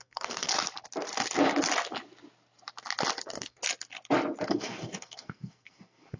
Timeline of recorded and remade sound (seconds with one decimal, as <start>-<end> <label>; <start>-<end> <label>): 0.0-0.5 remade; 0.5-3.2 recorded; 3.2-3.6 remade; 3.6-4.5 recorded; 4.5-6.2 remade